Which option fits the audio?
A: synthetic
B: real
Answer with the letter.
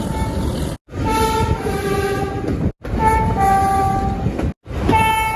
B